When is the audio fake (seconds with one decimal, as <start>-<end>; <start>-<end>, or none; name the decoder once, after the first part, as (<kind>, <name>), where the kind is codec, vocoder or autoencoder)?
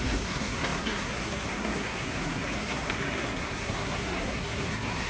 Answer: 0.0-5.1 (codec, SNAC)